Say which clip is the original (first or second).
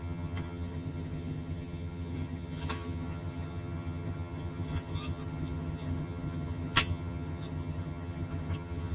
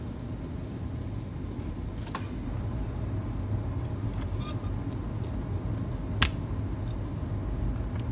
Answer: second